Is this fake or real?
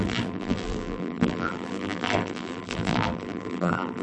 fake